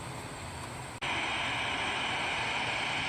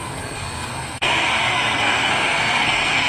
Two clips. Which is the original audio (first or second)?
first